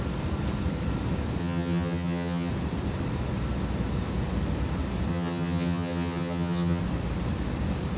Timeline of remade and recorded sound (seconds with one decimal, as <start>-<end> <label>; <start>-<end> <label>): 0.0-1.4 recorded; 1.4-2.5 remade; 2.5-5.1 recorded; 5.1-6.8 remade; 6.8-8.0 recorded